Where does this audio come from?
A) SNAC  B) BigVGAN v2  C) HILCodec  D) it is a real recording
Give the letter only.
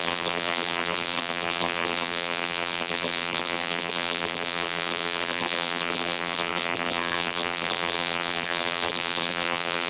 B